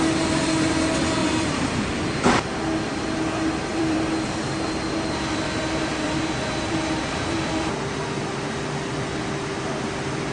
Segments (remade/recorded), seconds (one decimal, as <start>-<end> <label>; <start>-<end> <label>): 0.0-1.2 recorded; 1.2-2.5 remade; 2.5-3.7 recorded; 3.7-8.0 remade; 8.0-10.3 recorded